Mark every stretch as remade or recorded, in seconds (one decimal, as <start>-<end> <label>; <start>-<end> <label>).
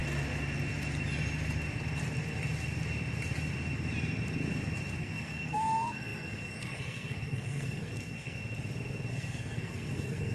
0.0-5.0 recorded; 5.0-8.4 remade; 8.4-9.1 recorded; 9.1-10.3 remade